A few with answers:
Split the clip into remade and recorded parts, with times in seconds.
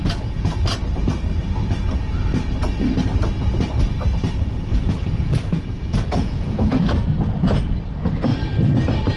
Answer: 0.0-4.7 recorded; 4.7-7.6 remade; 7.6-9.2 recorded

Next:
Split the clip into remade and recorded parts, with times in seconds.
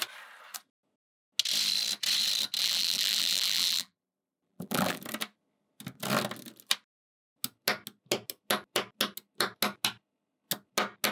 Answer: 0.0-2.6 recorded; 2.6-5.0 remade; 5.0-11.1 recorded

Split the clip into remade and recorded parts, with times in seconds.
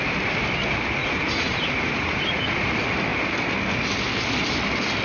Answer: 0.0-1.0 recorded; 1.0-2.7 remade; 2.7-5.0 recorded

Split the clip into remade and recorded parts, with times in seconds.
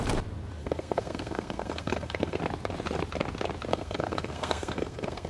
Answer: 0.0-0.6 recorded; 0.6-2.4 remade; 2.4-3.7 recorded; 3.7-5.3 remade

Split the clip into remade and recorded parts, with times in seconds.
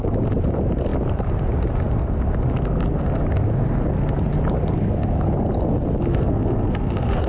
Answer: 0.0-6.1 recorded; 6.1-7.3 remade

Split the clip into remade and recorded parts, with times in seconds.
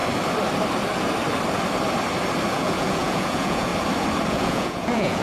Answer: 0.0-2.5 recorded; 2.5-3.7 remade; 3.7-4.3 recorded; 4.3-5.2 remade